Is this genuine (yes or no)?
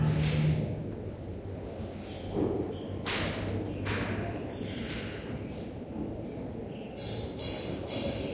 yes